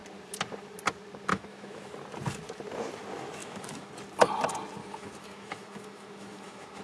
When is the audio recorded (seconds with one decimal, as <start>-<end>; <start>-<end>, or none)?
0.0-1.3; 1.9-3.4; 3.9-4.8

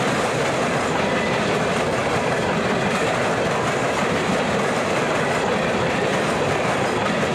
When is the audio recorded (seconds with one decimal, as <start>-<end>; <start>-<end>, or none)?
0.0-2.0; 3.2-7.3